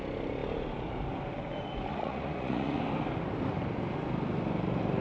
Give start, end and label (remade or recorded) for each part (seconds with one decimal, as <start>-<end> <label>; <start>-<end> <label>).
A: 0.0-1.9 recorded; 1.9-2.8 remade; 2.8-5.0 recorded